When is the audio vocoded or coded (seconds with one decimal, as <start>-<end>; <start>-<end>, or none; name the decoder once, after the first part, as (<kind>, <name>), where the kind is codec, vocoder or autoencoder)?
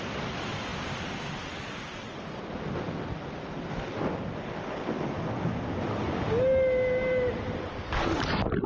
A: none